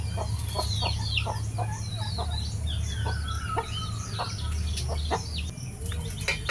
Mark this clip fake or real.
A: real